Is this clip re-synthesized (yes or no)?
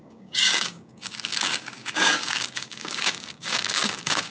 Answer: yes